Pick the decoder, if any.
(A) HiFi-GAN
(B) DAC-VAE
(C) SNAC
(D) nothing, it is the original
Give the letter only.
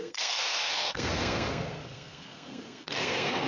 C